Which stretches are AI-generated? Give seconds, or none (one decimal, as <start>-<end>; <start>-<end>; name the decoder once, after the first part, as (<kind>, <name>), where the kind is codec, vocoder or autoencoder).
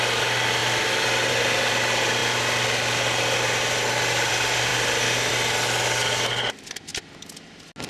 none